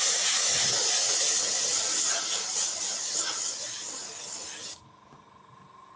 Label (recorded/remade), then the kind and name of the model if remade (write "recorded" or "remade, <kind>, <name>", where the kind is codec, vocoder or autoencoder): recorded